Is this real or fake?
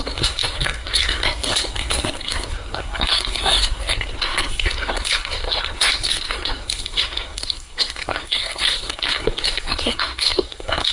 fake